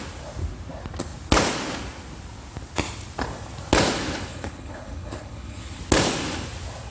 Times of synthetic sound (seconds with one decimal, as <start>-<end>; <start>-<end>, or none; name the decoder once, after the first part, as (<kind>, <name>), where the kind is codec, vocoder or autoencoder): 4.3-5.8 (codec, HILCodec)